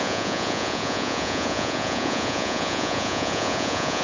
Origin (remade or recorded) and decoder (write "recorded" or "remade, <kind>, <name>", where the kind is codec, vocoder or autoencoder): remade, vocoder, Vocos